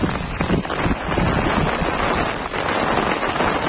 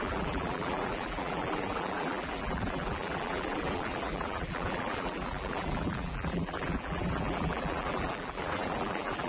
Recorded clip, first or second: first